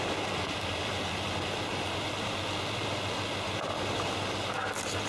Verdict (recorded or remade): recorded